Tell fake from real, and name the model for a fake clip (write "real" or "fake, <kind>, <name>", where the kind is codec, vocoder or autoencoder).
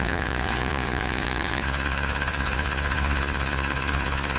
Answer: fake, vocoder, Vocos